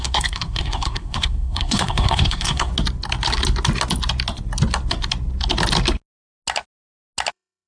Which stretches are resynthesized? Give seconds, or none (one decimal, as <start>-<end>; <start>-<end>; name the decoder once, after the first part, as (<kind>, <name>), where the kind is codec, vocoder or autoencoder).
0.0-2.7 (codec, SNAC); 7.3-7.7